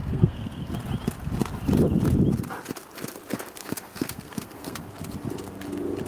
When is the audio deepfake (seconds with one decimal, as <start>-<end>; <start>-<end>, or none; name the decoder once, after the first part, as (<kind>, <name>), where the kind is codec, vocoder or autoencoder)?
0.0-0.7 (codec, SNAC); 3.6-4.9